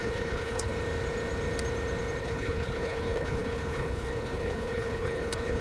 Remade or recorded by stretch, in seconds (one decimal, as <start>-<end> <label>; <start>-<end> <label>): 0.0-0.7 remade; 0.7-2.2 recorded; 2.2-5.6 remade